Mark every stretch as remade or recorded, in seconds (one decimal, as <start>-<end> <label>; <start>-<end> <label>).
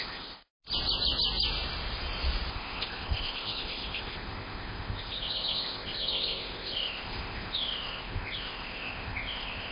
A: 0.0-0.5 remade; 0.5-2.5 recorded; 2.5-9.7 remade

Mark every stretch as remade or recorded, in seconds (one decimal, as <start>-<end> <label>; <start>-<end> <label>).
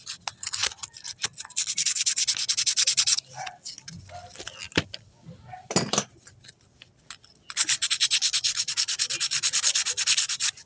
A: 0.0-10.7 recorded